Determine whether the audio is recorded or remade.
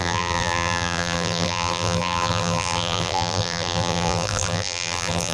remade